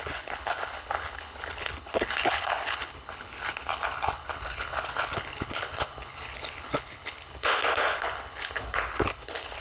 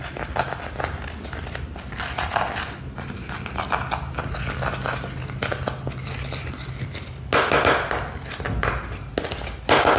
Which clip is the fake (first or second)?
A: first